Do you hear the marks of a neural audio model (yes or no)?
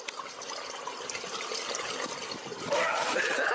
no